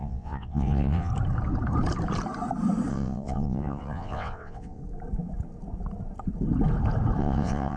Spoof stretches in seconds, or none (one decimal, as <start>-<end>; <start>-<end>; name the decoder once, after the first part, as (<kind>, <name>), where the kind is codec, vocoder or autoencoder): 0.0-1.1 (vocoder, WaveNeXt); 2.9-4.8; 7.2-7.8